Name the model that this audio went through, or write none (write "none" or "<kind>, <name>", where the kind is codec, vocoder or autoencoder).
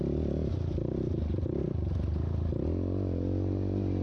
none